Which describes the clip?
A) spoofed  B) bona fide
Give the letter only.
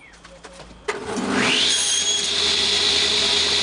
A